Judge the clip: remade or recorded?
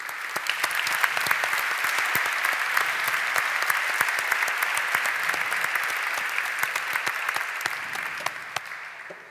recorded